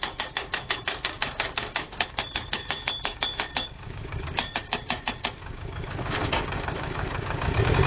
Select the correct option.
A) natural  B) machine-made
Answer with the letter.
B